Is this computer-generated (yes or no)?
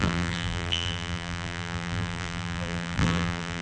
yes